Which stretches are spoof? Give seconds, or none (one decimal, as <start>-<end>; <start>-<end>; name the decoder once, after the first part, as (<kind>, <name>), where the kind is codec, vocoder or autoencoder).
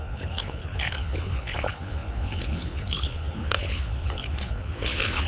0.0-5.3 (codec, HILCodec)